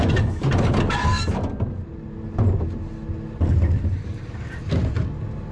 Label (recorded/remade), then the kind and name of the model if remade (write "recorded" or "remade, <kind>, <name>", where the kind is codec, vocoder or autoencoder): recorded